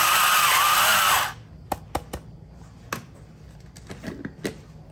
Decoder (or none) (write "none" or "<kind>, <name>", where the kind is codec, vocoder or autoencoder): none